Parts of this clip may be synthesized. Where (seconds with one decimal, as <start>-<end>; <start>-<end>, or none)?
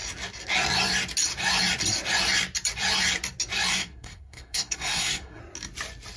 3.7-5.4